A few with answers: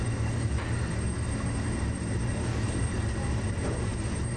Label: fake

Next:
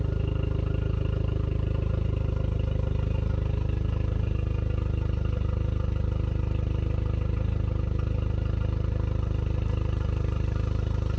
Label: real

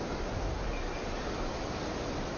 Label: real